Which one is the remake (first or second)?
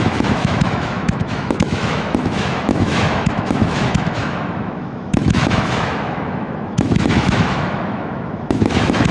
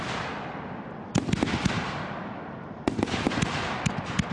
first